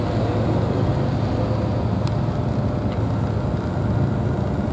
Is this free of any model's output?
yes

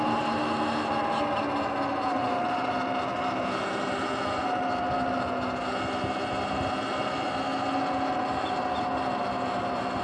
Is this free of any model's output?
yes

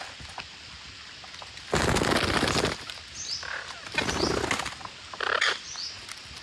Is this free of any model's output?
yes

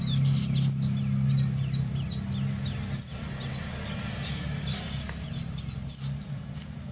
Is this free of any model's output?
yes